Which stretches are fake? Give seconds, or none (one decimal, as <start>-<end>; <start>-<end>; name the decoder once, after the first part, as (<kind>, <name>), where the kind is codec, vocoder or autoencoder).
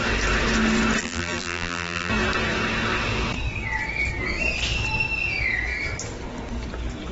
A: 1.0-2.1 (vocoder, BigVGAN v2)